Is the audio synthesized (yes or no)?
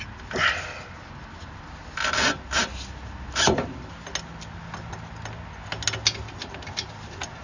no